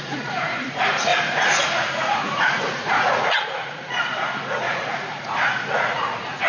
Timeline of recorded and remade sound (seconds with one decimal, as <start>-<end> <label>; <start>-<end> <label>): 0.0-1.1 remade; 1.1-1.6 recorded; 1.6-6.5 remade